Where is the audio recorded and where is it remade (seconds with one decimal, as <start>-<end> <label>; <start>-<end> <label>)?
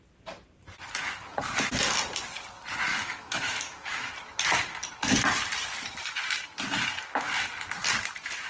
0.0-2.9 recorded; 2.9-4.1 remade; 4.1-8.5 recorded